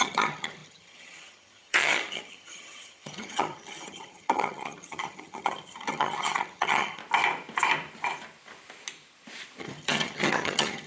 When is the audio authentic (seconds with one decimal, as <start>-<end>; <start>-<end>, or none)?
7.0-9.6